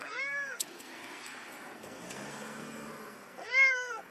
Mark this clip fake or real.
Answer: fake